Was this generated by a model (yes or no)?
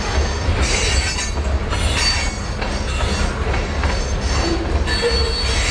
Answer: no